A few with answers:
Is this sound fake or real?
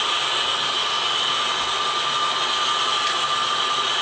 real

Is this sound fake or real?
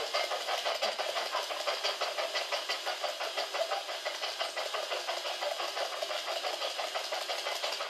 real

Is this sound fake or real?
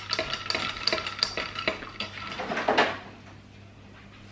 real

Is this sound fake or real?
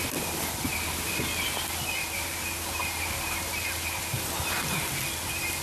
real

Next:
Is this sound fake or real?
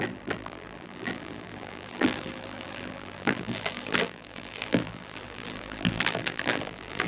fake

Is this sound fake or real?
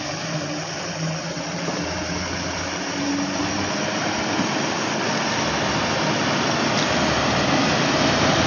real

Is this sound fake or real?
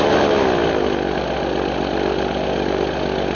real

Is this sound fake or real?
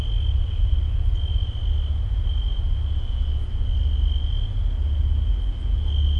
real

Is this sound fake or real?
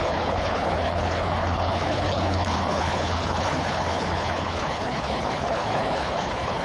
fake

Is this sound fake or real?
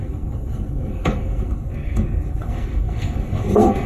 fake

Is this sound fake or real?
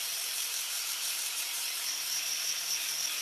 fake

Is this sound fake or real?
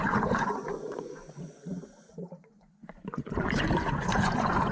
fake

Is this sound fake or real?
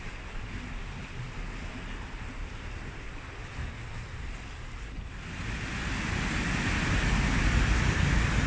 real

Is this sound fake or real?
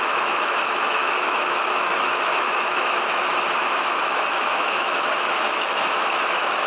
fake